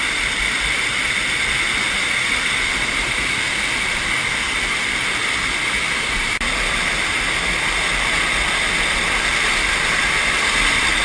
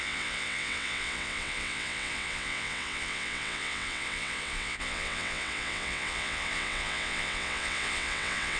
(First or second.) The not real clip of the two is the second